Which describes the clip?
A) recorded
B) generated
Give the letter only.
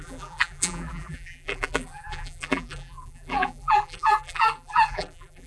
B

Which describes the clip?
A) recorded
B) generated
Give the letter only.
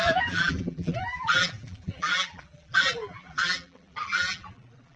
B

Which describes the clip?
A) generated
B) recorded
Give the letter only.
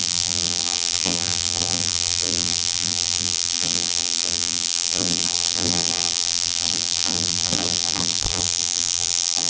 A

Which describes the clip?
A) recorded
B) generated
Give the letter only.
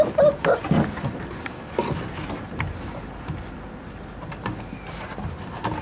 A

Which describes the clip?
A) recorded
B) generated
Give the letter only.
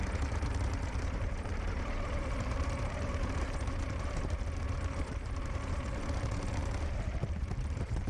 B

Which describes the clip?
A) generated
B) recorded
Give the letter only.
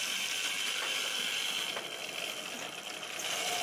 B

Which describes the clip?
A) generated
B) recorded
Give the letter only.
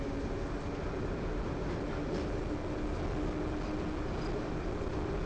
B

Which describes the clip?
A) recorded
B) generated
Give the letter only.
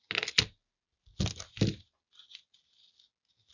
A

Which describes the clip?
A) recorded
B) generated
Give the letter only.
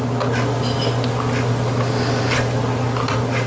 A